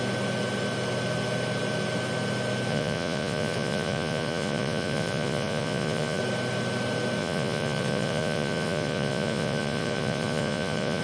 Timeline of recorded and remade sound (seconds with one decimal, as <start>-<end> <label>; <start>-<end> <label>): 0.0-2.7 recorded; 2.7-6.2 remade; 6.2-7.2 recorded; 7.2-11.0 remade